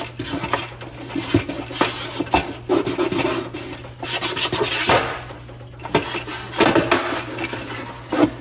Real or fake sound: real